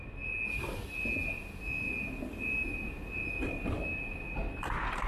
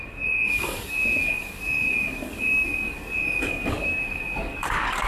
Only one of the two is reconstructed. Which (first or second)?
second